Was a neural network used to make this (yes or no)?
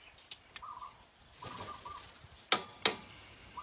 no